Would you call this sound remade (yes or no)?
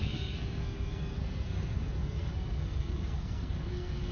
yes